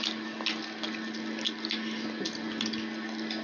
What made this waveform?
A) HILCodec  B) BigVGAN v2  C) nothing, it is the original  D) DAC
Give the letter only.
C